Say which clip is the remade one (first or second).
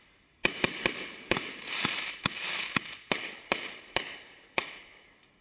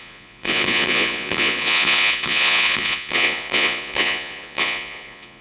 second